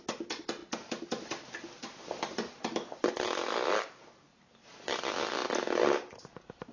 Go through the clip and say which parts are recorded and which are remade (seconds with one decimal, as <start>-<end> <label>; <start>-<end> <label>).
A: 0.0-6.7 recorded